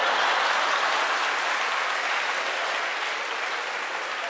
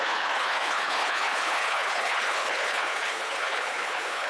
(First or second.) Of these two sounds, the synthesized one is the second